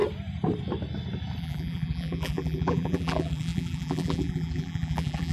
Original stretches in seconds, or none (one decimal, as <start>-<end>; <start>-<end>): 0.0-1.4